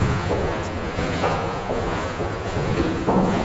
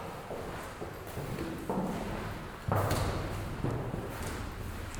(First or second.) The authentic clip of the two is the second